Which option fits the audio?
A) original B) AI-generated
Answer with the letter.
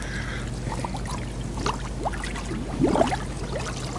A